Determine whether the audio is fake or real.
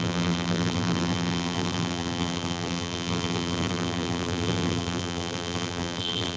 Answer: fake